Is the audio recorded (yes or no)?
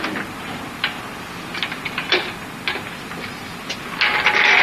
yes